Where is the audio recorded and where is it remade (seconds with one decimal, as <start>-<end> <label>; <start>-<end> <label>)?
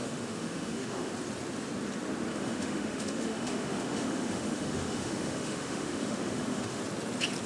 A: 0.0-1.1 remade; 1.1-2.3 recorded; 2.3-6.8 remade; 6.8-7.5 recorded